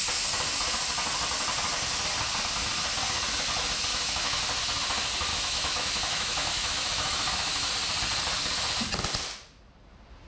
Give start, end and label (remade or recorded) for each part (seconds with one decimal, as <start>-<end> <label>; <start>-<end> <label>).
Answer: 0.0-3.9 recorded; 3.9-4.4 remade; 4.4-5.3 recorded; 5.3-7.7 remade; 7.7-10.3 recorded

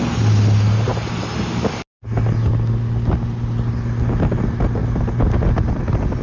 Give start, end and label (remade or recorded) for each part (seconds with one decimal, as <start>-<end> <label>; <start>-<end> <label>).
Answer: 0.0-6.2 recorded

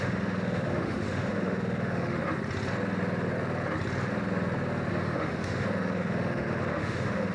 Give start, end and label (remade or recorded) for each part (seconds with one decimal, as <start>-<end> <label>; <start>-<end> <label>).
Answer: 0.0-2.2 remade; 2.2-4.9 recorded; 4.9-7.3 remade

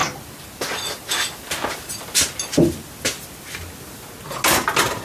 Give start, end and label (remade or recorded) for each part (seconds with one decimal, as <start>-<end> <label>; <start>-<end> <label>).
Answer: 0.0-5.0 recorded

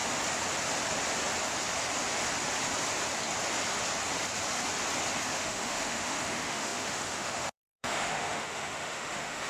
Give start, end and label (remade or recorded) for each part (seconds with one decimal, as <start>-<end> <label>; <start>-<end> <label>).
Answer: 0.0-5.3 recorded; 5.3-9.5 remade

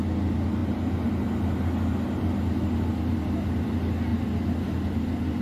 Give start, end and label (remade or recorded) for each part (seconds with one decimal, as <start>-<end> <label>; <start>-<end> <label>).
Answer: 0.0-5.4 recorded